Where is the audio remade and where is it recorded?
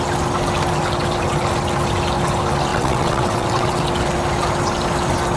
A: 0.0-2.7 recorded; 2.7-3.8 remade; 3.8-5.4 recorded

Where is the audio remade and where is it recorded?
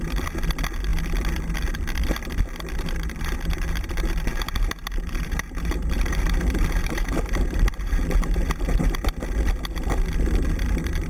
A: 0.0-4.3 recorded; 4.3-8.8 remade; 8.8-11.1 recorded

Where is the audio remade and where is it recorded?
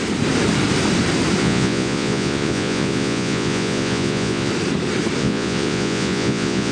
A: 0.0-1.4 recorded; 1.4-4.5 remade; 4.5-5.2 recorded; 5.2-6.7 remade